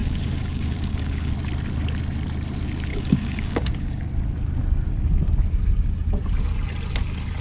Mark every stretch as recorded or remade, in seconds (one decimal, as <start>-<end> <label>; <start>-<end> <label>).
0.0-1.3 remade; 1.3-2.9 recorded; 2.9-4.0 remade; 4.0-7.4 recorded